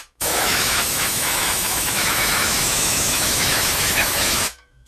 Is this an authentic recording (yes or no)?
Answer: no